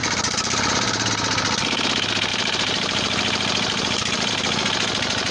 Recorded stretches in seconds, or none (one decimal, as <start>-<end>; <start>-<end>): 1.1-2.3; 4.3-5.3